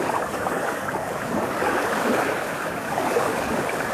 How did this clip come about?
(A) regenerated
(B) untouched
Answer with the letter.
A